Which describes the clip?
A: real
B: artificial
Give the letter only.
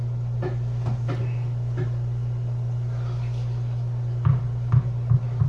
A